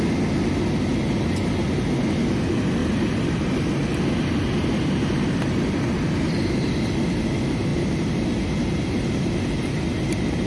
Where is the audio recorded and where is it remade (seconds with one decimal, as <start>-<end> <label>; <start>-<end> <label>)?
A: 0.0-2.8 recorded; 2.8-7.1 remade; 7.1-7.7 recorded; 7.7-10.1 remade; 10.1-10.5 recorded